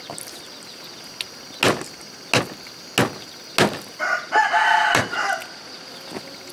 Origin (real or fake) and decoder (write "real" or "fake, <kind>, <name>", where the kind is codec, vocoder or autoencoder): real